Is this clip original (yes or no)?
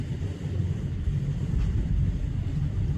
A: no